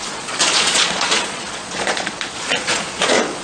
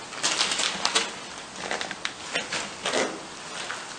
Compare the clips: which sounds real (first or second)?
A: second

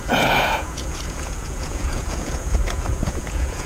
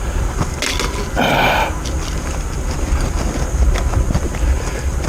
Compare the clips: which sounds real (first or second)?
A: second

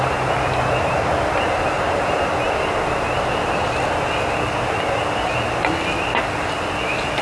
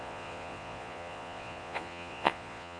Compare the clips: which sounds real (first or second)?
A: first